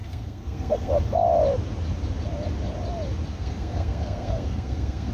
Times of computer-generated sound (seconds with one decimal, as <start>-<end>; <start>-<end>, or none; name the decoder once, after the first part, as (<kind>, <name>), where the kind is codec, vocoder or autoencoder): 0.0-0.9 (codec, SNAC); 3.3-5.1